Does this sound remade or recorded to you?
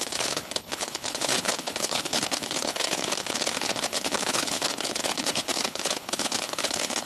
remade